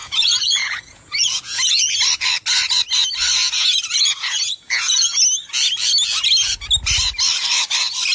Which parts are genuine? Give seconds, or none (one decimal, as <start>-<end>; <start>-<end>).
1.9-3.4; 5.2-8.1